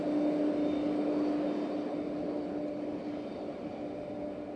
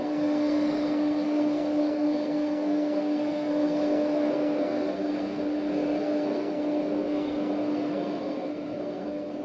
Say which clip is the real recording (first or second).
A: first